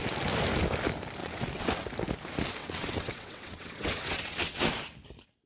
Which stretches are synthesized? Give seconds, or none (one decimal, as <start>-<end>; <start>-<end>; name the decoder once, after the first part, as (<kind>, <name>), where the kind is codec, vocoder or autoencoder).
1.2-1.8 (vocoder, WaveNeXt); 2.6-4.7